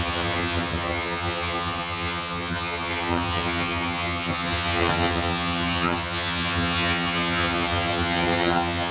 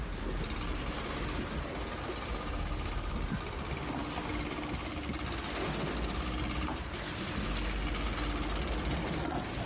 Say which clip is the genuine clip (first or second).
second